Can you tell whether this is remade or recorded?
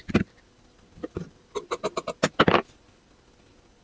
recorded